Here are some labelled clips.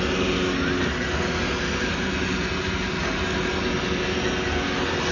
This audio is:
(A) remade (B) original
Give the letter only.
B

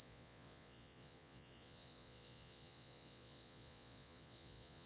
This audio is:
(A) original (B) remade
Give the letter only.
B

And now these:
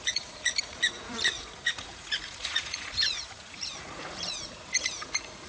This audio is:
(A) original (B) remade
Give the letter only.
B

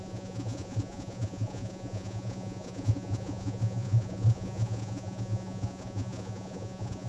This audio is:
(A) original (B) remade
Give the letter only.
B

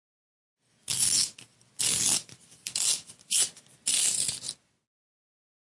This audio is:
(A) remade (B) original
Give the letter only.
B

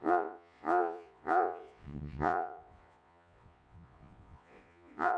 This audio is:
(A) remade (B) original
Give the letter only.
A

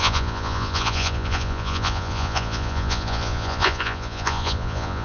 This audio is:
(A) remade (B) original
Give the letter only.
A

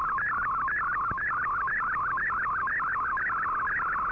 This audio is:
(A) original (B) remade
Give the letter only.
A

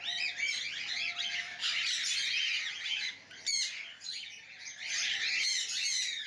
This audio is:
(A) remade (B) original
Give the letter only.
B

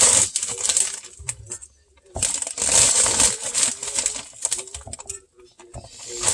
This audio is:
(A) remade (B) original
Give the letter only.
B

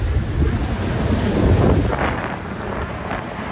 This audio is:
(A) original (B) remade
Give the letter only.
A